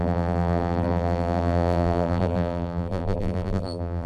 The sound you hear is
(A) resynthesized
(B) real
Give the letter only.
A